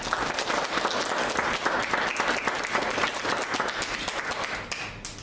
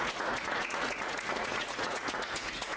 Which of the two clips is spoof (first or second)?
second